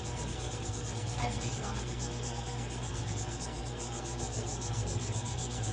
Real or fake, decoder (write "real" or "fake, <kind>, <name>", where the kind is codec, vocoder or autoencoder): fake, codec, SNAC